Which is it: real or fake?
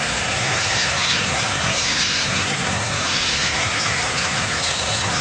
fake